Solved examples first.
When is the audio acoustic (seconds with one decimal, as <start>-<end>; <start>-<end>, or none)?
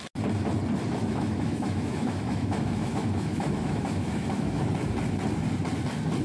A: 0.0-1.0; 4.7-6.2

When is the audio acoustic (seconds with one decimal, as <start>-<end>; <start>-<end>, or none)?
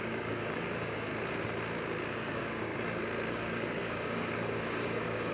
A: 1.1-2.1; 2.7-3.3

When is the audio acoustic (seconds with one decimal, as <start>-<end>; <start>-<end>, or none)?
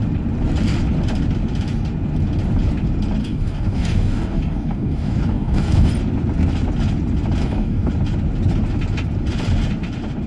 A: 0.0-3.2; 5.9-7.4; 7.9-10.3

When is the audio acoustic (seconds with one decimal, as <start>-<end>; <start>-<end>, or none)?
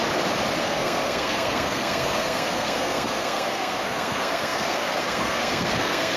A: 0.0-0.6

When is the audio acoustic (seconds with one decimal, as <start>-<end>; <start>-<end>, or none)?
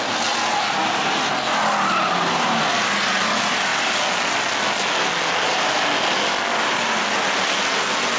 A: 0.0-8.2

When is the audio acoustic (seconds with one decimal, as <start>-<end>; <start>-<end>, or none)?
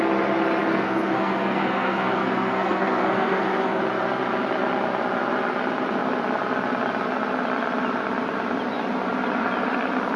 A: 0.0-0.7; 3.8-10.2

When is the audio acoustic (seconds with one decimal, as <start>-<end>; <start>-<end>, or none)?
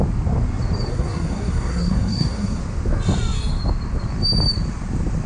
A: 0.0-0.9; 2.6-5.3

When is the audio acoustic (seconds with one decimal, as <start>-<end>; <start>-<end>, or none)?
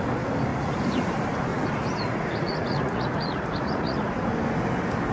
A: 0.0-0.5; 1.1-1.5; 4.1-5.1